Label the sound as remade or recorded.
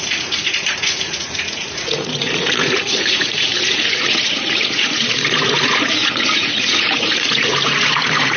remade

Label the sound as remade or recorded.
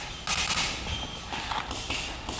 recorded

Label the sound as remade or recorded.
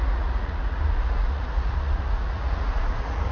remade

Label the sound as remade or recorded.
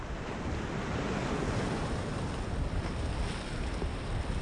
recorded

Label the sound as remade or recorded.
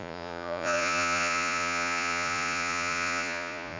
remade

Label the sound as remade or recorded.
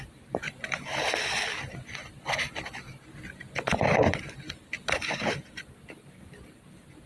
recorded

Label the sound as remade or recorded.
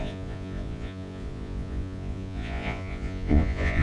remade